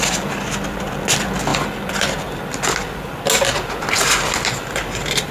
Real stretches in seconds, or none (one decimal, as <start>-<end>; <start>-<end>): 0.0-5.3